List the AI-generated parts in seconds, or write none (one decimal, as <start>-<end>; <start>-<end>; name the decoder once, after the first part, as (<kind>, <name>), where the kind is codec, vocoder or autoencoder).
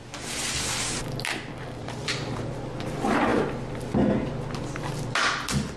1.8-2.5 (vocoder, BigVGAN v2)